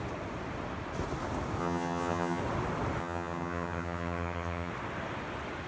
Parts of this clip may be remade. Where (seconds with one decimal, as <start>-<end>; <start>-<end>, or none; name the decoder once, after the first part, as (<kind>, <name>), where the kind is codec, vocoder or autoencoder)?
1.6-2.4 (vocoder, HiFi-GAN); 3.0-4.7